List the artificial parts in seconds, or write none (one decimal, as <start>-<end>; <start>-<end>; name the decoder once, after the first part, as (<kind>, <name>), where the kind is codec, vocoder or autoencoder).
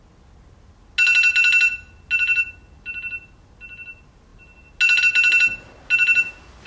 none